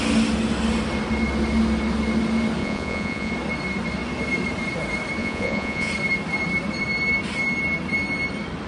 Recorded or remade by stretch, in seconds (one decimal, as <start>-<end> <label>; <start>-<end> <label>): 0.0-2.6 recorded; 2.6-3.3 remade; 3.3-5.2 recorded; 5.2-5.9 remade; 5.9-8.7 recorded